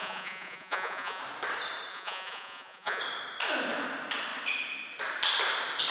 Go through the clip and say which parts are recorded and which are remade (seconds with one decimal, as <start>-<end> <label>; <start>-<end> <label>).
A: 0.0-1.2 remade; 1.2-1.9 recorded; 1.9-3.0 remade; 3.0-5.9 recorded